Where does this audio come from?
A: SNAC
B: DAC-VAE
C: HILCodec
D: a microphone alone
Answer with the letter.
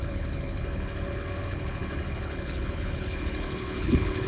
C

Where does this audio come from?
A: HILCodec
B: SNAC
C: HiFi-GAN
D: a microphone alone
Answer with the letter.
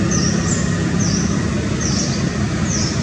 D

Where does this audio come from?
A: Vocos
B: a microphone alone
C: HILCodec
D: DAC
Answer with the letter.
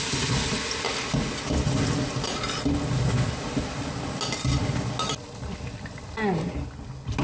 B